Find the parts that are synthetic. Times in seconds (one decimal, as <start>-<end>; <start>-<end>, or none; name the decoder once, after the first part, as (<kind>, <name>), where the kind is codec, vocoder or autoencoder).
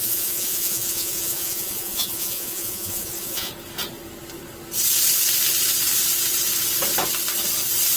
0.0-3.5 (vocoder, Vocos)